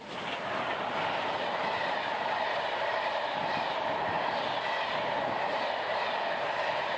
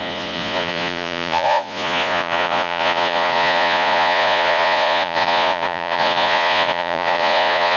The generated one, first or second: second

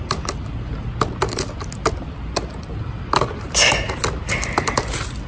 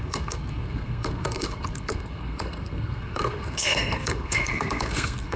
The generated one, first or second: second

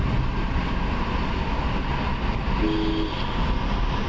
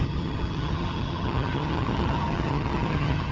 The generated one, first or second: second